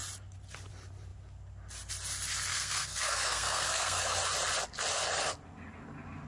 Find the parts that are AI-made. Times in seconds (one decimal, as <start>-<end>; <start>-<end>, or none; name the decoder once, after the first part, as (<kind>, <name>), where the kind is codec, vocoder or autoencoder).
2.5-4.2 (codec, SNAC)